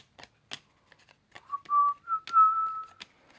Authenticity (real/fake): real